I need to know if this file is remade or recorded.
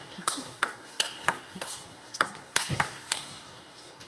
remade